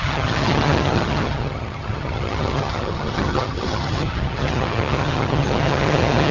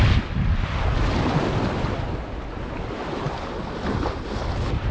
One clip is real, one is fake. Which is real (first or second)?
second